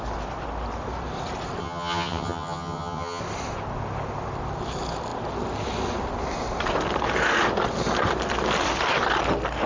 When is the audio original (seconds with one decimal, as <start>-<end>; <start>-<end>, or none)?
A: 0.0-1.6; 3.2-9.7